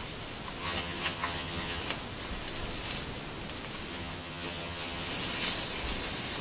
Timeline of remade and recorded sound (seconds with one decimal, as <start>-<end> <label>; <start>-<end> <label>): 0.0-0.6 recorded; 0.6-1.8 remade; 1.8-3.9 recorded; 3.9-5.1 remade; 5.1-6.4 recorded